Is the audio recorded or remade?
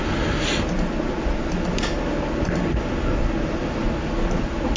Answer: recorded